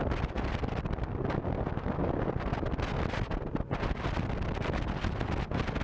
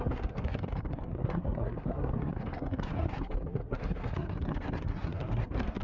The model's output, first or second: second